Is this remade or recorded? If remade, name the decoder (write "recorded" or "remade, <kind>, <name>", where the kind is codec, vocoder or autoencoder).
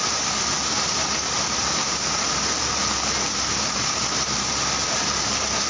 remade, vocoder, BigVGAN v2